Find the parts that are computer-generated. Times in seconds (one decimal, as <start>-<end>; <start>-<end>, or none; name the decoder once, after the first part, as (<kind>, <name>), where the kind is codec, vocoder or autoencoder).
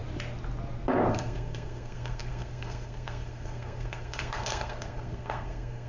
1.1-5.9 (codec, SNAC)